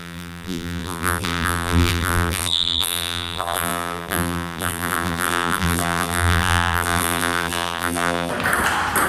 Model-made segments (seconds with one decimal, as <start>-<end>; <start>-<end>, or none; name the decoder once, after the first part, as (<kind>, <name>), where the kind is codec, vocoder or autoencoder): 0.0-8.3 (vocoder, BigVGAN v2)